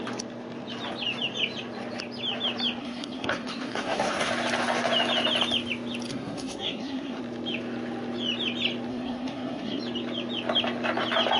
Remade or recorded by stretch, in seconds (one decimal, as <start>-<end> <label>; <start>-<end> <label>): 0.0-2.8 recorded; 2.8-4.3 remade; 4.3-6.1 recorded; 6.1-7.2 remade; 7.2-8.9 recorded; 8.9-9.8 remade; 9.8-11.4 recorded